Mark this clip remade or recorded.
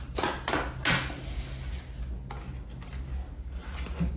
recorded